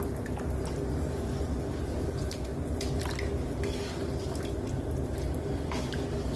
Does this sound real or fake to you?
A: real